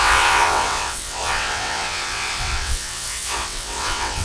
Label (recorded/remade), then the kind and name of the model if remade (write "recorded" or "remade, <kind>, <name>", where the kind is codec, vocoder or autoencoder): remade, vocoder, WaveNeXt